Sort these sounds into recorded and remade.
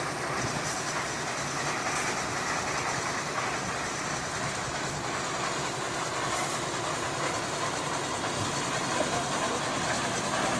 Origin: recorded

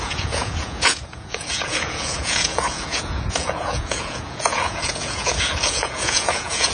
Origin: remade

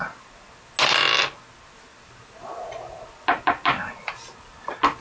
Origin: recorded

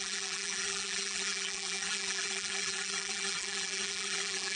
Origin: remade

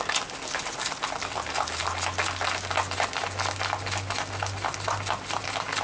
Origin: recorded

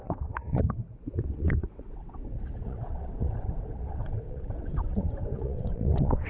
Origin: remade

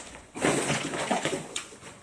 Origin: remade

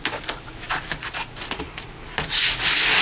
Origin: recorded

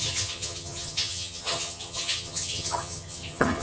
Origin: remade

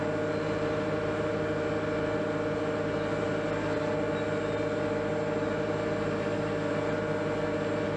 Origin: recorded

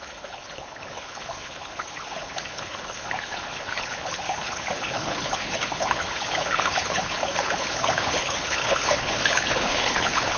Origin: remade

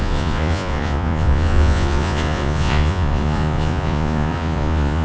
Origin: remade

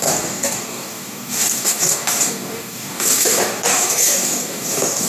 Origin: remade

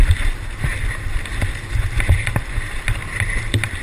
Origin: remade